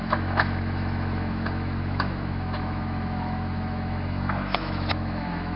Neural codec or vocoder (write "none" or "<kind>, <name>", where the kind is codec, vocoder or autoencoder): autoencoder, DAC-VAE